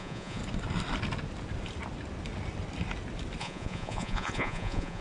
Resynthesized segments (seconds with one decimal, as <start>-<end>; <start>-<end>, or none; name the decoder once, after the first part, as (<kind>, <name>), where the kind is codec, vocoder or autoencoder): 0.0-0.4 (vocoder, Vocos); 3.4-5.0